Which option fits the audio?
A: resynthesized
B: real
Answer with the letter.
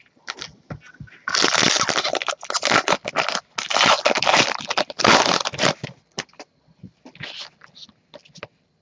B